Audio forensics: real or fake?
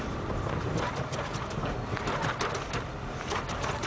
fake